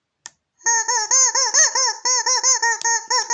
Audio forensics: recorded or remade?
recorded